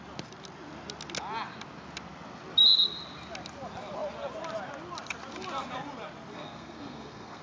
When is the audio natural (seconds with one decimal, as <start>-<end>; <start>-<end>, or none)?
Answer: 0.0-6.3